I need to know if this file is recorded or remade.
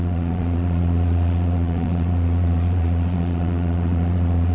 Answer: remade